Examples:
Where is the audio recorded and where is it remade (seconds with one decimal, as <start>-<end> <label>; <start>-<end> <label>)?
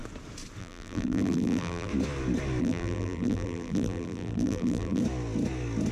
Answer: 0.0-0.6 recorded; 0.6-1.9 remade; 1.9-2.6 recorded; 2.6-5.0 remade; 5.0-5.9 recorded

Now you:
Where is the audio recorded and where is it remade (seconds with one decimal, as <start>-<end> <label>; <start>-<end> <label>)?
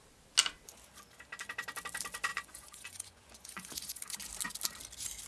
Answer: 0.0-2.3 recorded; 2.3-4.0 remade; 4.0-5.3 recorded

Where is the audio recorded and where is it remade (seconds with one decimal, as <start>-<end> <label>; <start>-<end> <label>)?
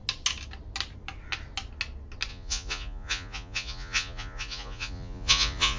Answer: 0.0-2.3 recorded; 2.3-5.8 remade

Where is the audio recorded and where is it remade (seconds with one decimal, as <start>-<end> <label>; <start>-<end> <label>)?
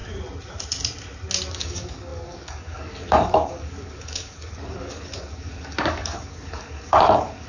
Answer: 0.0-1.5 recorded; 1.5-7.5 remade